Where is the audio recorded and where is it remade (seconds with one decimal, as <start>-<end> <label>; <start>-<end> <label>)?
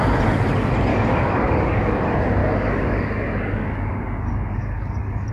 0.0-0.9 recorded; 0.9-2.0 remade; 2.0-2.4 recorded; 2.4-5.3 remade